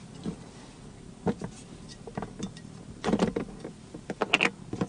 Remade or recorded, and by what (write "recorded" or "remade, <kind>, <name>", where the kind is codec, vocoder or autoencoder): recorded